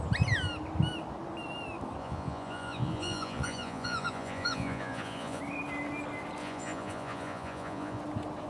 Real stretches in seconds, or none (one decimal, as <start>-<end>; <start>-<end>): 0.0-2.0; 5.4-6.4; 8.0-8.5